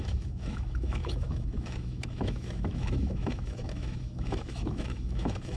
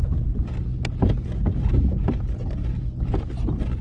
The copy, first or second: first